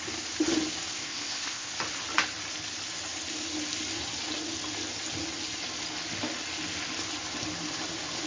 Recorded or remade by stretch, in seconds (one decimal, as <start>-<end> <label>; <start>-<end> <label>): 0.0-0.9 recorded; 0.9-1.7 remade; 1.7-8.3 recorded